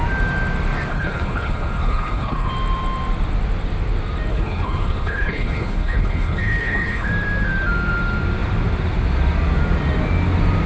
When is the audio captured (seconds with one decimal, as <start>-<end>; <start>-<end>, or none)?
0.0-0.9; 2.5-4.3; 7.1-10.7